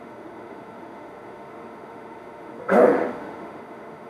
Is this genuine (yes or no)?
no